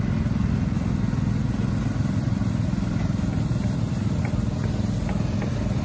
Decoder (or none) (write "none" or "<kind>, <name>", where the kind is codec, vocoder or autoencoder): none